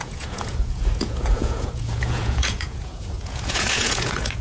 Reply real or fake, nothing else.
fake